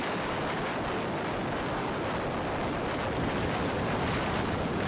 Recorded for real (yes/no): yes